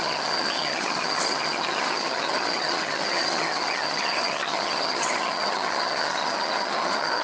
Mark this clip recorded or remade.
remade